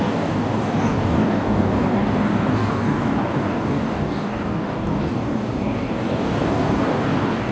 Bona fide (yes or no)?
no